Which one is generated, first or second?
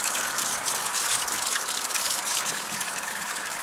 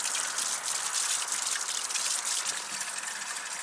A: first